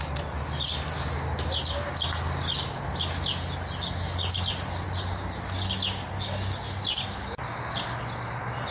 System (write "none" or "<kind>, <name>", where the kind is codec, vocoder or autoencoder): none